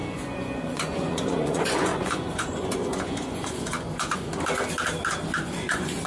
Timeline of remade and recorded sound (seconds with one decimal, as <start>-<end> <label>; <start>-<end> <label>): 0.0-4.3 remade; 4.3-5.4 recorded; 5.4-6.1 remade